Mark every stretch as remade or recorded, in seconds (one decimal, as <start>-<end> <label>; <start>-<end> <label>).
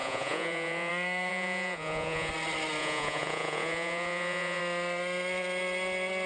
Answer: 0.0-0.9 remade; 0.9-1.3 recorded; 1.3-2.3 remade; 2.3-2.8 recorded; 2.8-4.6 remade; 4.6-6.3 recorded